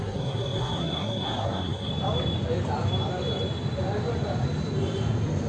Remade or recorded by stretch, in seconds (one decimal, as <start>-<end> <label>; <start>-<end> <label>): 0.0-1.9 remade; 1.9-5.5 recorded